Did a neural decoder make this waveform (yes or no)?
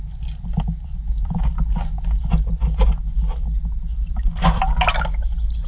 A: no